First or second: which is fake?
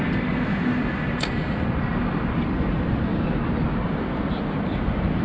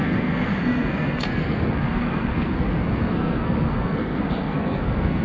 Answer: second